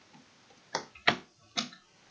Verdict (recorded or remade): recorded